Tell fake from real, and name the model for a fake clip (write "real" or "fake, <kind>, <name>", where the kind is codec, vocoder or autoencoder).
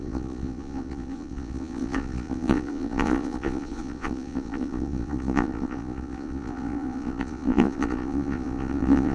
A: fake, vocoder, Vocos